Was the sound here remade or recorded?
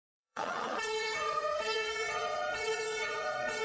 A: remade